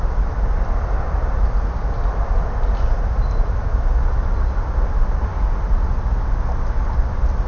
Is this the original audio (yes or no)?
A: yes